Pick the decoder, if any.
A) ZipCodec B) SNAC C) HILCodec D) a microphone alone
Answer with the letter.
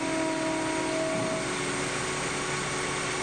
D